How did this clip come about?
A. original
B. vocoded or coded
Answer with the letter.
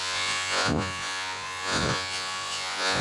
B